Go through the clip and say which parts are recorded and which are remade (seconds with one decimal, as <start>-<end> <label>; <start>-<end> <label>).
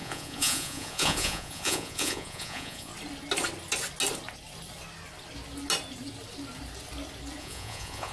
0.0-2.9 remade; 2.9-7.4 recorded; 7.4-8.1 remade